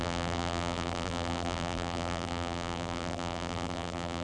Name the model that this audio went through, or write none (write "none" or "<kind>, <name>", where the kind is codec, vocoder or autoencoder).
vocoder, BigVGAN v2